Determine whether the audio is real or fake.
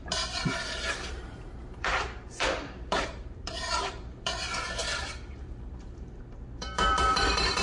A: fake